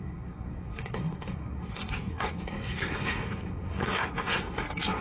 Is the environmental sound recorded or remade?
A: remade